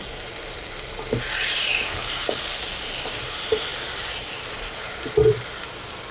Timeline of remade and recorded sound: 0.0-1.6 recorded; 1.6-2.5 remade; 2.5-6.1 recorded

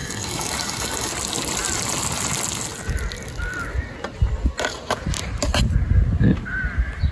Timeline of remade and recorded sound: 0.0-1.1 remade; 1.1-7.1 recorded